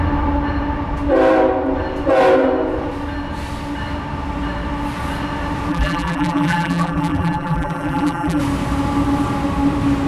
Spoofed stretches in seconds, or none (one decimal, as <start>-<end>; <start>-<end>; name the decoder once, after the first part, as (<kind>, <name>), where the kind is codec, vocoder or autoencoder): 5.7-8.4 (vocoder, BigVGAN v2)